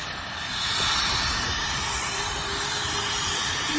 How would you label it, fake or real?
real